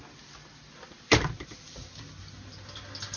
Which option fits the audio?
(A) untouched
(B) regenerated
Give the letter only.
A